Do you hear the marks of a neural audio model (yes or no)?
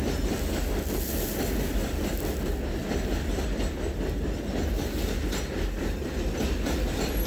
no